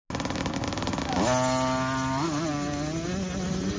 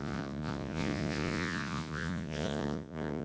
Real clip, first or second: first